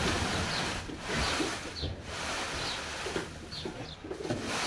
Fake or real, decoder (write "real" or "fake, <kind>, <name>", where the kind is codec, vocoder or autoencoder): real